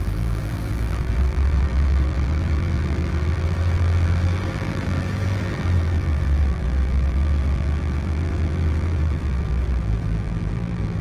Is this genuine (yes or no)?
no